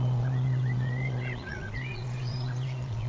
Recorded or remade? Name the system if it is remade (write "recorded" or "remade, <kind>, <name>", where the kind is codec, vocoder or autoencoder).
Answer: remade, vocoder, Vocos